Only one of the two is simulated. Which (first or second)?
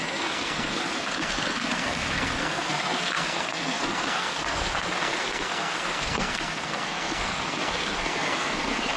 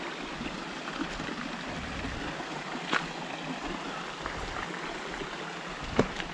first